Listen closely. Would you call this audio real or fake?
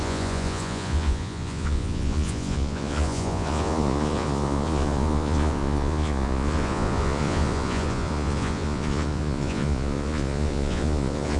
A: fake